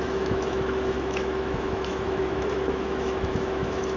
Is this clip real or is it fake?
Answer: fake